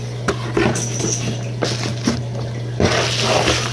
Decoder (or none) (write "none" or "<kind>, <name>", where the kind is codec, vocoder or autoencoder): none